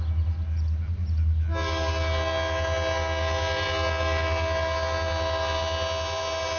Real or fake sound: real